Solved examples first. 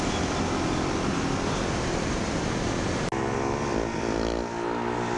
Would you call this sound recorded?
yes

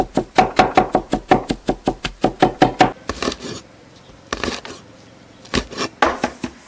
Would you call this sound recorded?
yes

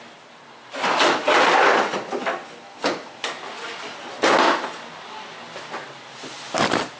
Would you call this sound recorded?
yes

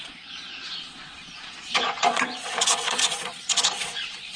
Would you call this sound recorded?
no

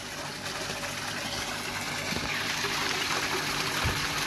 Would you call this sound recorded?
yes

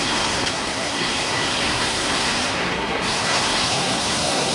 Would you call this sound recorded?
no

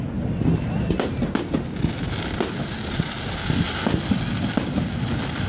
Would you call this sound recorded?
yes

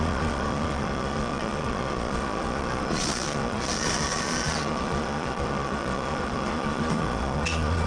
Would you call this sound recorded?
no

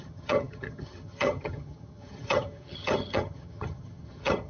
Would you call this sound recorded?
no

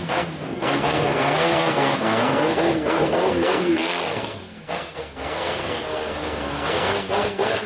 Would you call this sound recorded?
no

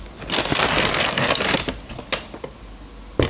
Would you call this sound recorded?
yes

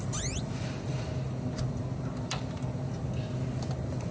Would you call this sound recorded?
yes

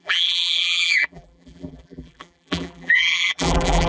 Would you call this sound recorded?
no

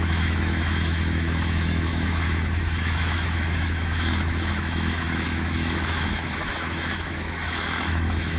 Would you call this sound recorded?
no